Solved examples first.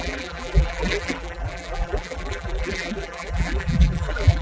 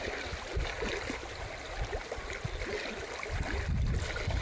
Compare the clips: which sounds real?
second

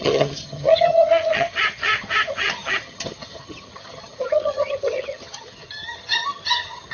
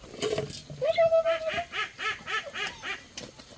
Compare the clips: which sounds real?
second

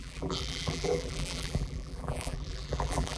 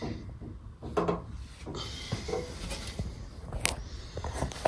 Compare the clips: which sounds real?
second